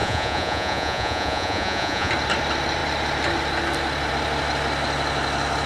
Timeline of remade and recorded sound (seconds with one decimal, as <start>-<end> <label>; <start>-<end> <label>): 0.0-2.1 remade; 2.1-5.7 recorded